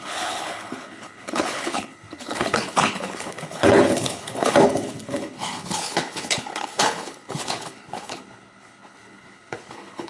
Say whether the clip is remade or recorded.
remade